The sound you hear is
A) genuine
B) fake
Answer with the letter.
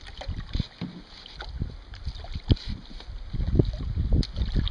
A